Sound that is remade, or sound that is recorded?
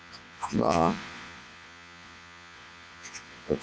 remade